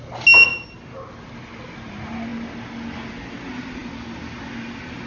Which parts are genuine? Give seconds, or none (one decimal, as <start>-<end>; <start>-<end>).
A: 0.0-5.1